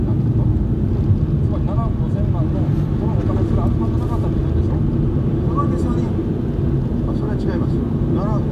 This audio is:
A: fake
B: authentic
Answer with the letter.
B